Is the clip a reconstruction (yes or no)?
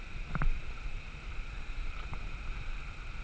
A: no